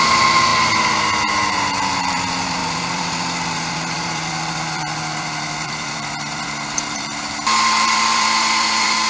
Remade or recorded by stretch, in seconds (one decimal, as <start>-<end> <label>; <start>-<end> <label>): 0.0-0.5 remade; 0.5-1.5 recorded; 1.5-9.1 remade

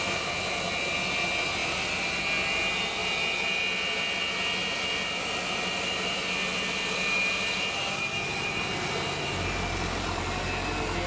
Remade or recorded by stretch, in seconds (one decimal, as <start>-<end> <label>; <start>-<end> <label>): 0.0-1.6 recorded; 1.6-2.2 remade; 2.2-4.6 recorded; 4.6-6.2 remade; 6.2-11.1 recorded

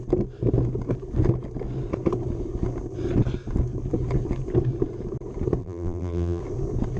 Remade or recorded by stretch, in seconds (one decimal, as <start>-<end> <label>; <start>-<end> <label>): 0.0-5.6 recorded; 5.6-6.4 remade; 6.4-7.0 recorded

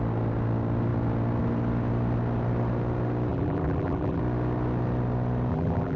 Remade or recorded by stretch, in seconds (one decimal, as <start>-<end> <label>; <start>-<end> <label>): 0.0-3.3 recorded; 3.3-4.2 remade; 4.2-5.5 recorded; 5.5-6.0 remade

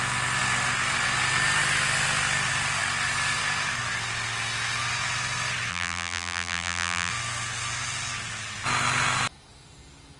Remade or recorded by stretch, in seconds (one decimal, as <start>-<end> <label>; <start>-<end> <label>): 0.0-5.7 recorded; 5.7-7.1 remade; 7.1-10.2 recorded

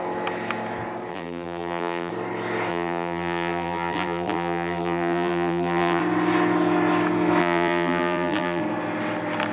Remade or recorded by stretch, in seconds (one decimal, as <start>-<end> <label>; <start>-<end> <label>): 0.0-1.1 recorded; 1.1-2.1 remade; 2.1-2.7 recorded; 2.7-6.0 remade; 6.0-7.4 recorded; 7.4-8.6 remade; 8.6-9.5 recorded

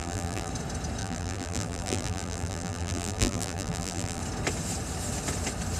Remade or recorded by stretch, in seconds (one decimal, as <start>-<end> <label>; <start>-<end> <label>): 0.0-0.5 remade; 0.5-1.0 recorded; 1.0-4.2 remade; 4.2-5.8 recorded

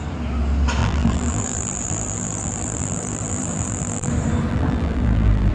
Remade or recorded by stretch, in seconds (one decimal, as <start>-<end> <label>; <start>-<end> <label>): 0.0-0.8 recorded; 0.8-4.1 remade; 4.1-4.5 recorded; 4.5-5.5 remade